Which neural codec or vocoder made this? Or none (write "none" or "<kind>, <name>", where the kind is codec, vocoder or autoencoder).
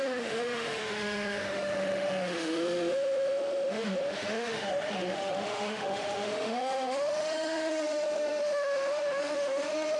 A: autoencoder, DAC-VAE